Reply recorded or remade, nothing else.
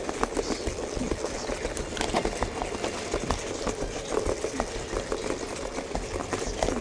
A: recorded